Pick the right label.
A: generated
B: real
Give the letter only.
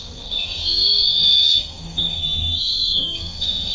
A